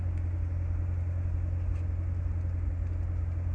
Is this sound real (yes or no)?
yes